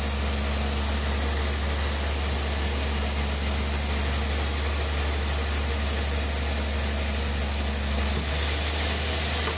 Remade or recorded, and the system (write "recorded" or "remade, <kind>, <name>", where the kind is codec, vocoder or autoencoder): recorded